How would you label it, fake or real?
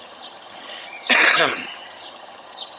fake